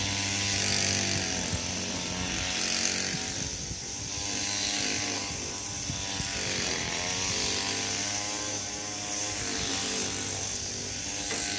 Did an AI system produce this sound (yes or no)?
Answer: no